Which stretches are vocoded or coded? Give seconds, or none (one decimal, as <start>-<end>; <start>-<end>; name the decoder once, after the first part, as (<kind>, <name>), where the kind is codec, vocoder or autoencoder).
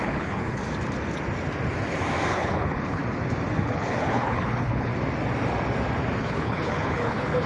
0.0-0.6 (codec, HILCodec); 2.3-3.0; 3.6-4.9; 6.2-7.5